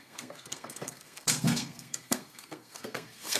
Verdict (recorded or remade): remade